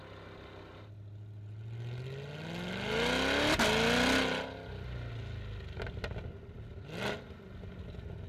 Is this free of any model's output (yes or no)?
yes